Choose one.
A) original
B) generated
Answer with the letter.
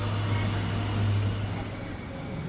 A